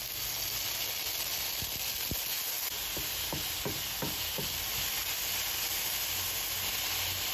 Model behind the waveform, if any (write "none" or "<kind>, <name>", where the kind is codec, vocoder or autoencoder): none